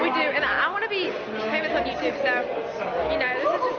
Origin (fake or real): real